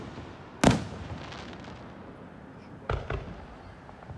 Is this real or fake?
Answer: real